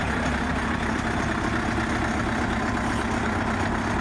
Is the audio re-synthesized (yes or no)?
no